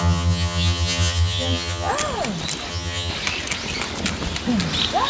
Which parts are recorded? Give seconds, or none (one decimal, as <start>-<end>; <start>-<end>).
1.9-2.7; 3.1-5.1